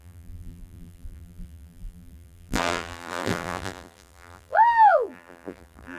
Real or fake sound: fake